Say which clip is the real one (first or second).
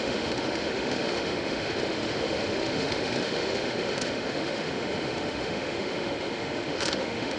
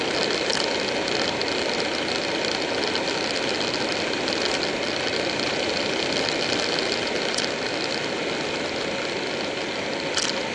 second